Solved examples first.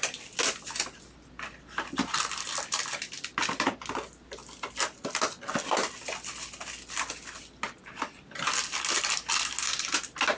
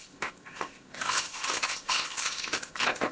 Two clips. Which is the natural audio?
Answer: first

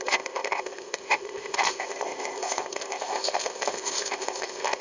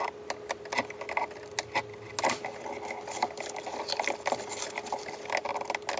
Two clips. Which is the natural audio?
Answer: second